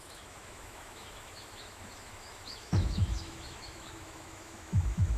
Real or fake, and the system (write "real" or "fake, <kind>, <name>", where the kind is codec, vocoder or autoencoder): fake, autoencoder, DAC-VAE